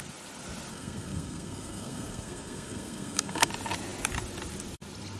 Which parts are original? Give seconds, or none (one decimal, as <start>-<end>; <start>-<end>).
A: 0.0-0.7; 3.5-5.2